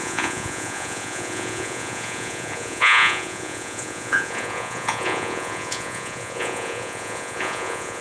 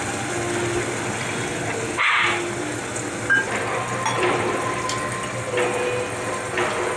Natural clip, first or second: second